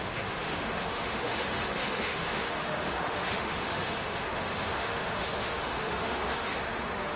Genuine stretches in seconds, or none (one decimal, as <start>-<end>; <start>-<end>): none